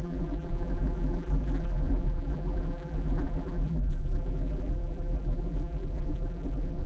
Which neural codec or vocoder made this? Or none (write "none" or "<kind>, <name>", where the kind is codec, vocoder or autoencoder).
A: vocoder, BigVGAN v2